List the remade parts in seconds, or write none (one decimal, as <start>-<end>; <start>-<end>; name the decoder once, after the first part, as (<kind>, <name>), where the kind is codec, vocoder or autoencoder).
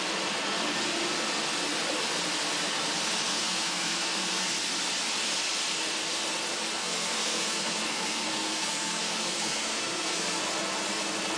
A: 3.3-4.5 (codec, SNAC); 6.8-10.4